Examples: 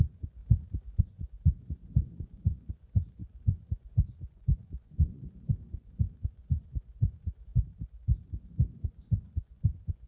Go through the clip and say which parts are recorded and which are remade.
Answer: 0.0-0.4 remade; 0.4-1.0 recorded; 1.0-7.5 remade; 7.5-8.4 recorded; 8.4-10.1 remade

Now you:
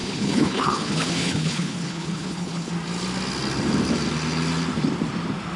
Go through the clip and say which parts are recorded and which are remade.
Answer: 0.0-2.7 remade; 2.7-5.6 recorded